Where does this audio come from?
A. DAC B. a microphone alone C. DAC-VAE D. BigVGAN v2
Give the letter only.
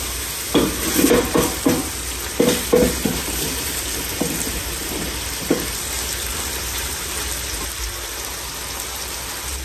B